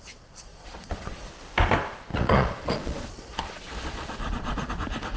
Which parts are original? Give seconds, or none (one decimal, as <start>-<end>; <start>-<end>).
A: 0.0-0.5; 1.3-2.1; 4.7-5.2